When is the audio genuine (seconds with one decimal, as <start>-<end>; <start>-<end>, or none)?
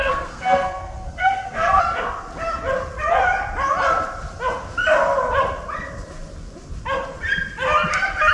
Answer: 1.8-8.3